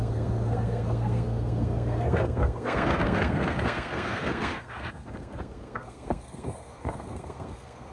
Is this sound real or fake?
fake